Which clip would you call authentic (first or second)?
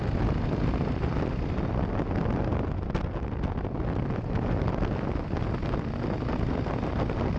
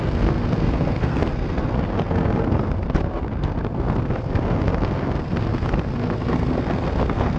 first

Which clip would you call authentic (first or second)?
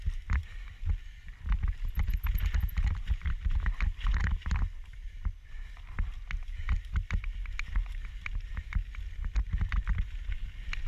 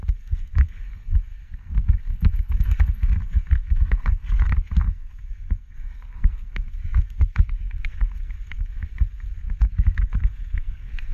first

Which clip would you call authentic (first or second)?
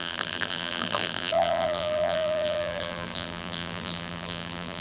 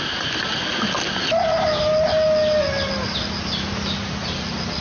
second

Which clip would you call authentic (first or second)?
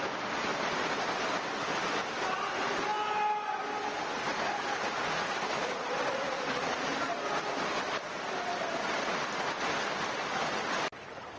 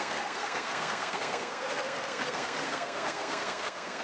first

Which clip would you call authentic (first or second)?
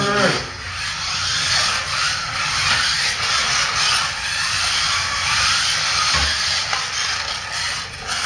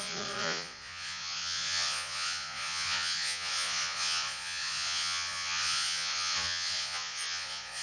first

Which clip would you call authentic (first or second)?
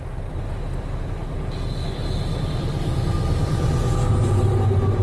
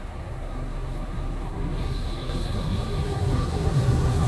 first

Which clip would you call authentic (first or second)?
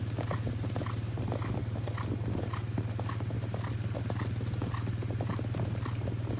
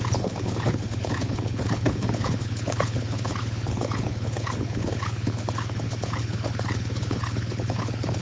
first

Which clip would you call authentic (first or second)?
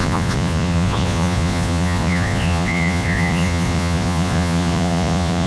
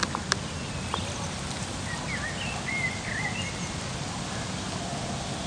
second